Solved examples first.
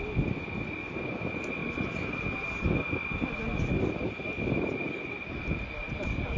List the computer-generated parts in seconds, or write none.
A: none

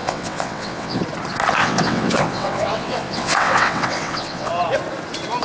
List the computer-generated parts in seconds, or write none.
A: 0.0-1.0 (vocoder, WaveNeXt); 1.6-4.5

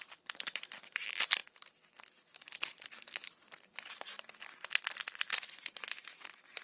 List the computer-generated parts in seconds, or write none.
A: 0.0-3.2 (vocoder, BigVGAN v2); 6.0-6.6

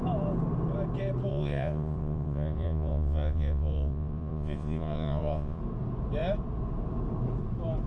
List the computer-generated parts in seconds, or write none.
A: 1.3-5.6 (vocoder, Vocos)

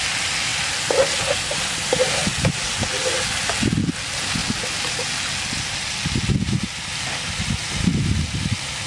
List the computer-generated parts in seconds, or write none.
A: none

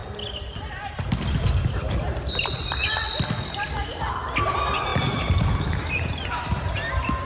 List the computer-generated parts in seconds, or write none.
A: none

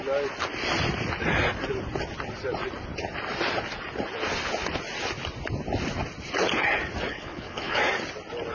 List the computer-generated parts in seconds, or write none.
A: 7.1-7.8 (codec, HILCodec)